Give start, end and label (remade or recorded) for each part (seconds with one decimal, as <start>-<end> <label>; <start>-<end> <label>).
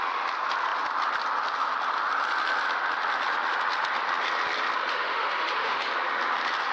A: 0.0-4.9 recorded; 4.9-5.9 remade; 5.9-6.7 recorded